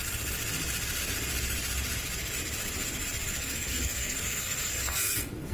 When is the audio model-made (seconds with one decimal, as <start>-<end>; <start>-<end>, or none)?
3.3-5.5